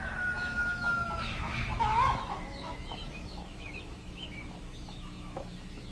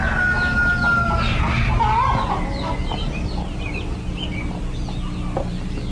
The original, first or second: second